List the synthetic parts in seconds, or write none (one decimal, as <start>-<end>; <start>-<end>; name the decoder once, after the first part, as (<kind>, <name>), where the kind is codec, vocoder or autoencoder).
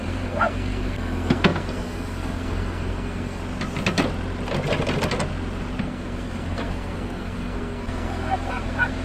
0.0-3.4 (codec, SNAC); 5.8-9.0